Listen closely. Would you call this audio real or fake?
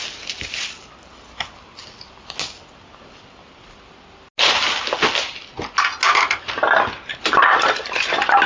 real